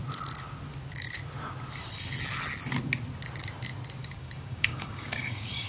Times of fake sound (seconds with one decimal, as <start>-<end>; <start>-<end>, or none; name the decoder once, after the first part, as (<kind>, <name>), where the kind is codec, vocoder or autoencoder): 4.0-5.7 (codec, DAC)